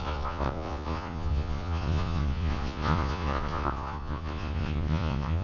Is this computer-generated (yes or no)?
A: yes